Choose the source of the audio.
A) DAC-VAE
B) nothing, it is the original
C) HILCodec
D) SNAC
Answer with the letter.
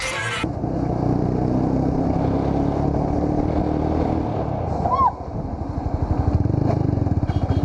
B